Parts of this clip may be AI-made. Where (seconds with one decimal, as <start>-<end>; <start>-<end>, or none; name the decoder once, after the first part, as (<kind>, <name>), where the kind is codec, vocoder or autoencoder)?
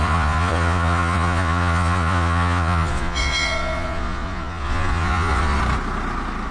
0.0-5.6 (vocoder, Vocos)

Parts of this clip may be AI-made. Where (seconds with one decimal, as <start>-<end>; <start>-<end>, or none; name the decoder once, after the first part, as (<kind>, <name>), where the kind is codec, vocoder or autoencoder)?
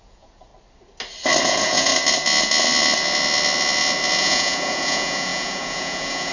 0.0-0.5 (vocoder, Vocos); 1.4-1.9; 4.2-6.3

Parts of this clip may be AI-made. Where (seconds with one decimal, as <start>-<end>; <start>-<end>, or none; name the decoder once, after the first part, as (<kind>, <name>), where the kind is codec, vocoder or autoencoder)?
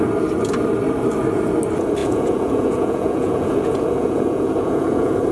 2.0-5.3 (vocoder, Vocos)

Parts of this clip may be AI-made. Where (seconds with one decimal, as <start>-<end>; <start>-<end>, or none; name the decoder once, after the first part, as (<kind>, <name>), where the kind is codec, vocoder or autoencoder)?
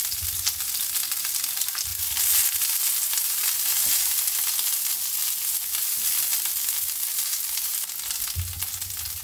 none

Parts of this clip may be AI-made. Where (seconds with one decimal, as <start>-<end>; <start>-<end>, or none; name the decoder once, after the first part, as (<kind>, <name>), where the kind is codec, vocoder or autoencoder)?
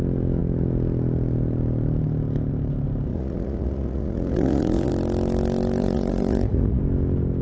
3.1-4.9 (vocoder, Vocos); 5.8-6.8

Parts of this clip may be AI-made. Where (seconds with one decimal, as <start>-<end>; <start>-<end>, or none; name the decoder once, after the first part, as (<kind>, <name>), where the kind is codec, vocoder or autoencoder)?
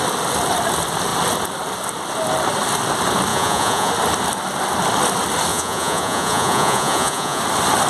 3.3-3.9 (vocoder, Vocos); 5.5-7.4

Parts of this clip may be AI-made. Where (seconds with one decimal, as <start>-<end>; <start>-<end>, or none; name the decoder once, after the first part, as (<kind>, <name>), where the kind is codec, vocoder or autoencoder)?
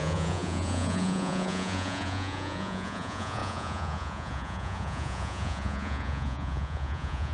0.0-7.3 (vocoder, Vocos)